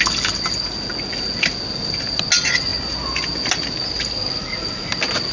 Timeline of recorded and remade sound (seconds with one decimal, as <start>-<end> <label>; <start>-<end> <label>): 0.0-5.3 recorded